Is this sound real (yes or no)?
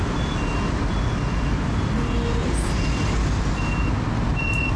yes